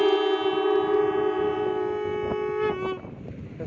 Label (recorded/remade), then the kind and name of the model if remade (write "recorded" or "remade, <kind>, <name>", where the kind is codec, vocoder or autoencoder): recorded